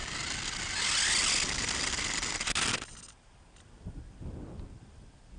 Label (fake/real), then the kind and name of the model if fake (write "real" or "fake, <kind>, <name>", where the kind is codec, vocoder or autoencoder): real